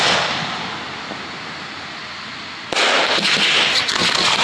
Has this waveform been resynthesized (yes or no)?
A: no